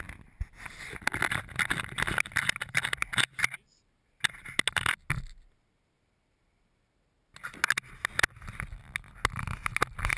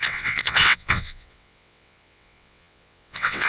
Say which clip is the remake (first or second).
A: second